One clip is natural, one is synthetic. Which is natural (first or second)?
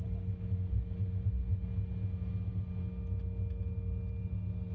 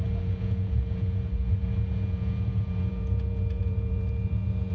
first